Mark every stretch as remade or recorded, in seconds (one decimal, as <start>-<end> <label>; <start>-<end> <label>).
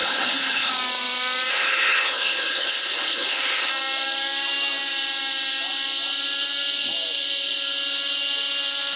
0.0-0.7 remade; 0.7-1.5 recorded; 1.5-3.7 remade; 3.7-9.0 recorded